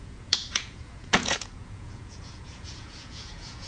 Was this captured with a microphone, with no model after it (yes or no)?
no